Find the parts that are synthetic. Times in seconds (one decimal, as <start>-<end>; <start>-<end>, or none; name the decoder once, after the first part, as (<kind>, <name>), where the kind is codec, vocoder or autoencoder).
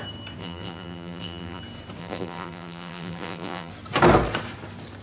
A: 0.4-1.6 (vocoder, BigVGAN v2); 2.0-3.7